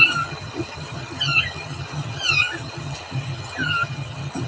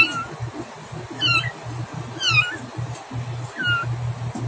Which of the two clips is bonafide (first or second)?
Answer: second